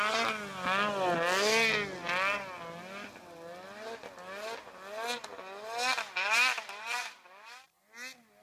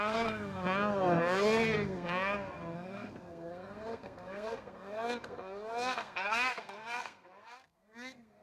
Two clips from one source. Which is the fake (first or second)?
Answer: second